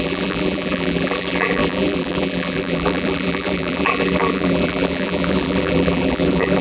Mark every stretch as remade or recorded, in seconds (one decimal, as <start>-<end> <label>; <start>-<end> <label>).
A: 0.0-6.6 remade